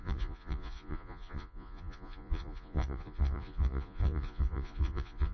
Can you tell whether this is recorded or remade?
remade